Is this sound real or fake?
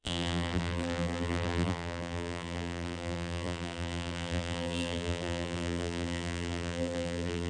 fake